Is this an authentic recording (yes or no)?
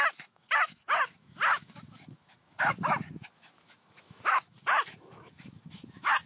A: no